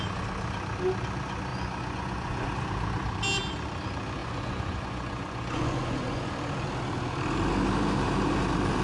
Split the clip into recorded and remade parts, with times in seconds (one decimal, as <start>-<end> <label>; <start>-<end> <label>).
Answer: 0.0-1.5 recorded; 1.5-2.5 remade; 2.5-4.2 recorded; 4.2-6.3 remade; 6.3-8.8 recorded